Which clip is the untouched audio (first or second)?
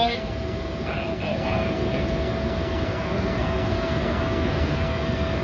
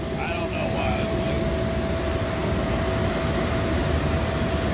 second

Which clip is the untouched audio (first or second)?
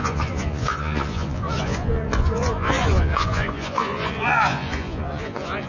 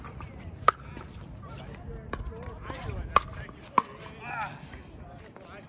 second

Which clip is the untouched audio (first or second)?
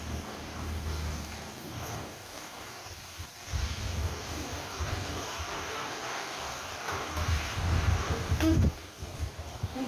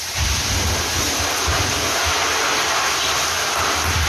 second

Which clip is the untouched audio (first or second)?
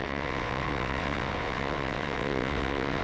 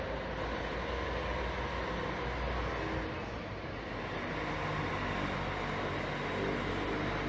second